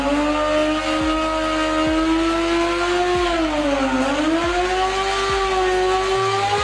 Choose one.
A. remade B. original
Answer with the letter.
B